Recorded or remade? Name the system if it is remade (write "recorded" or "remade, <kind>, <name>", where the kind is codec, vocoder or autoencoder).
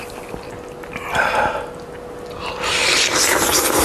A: recorded